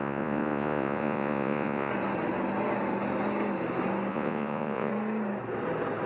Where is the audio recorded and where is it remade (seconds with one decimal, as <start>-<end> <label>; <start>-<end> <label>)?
0.0-1.9 remade; 1.9-4.1 recorded; 4.1-4.9 remade; 4.9-6.1 recorded